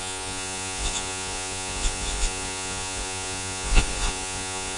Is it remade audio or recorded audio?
remade